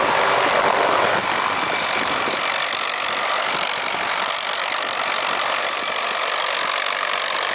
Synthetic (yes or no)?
no